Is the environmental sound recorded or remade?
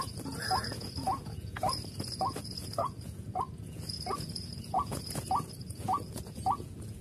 remade